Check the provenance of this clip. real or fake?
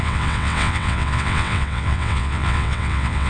fake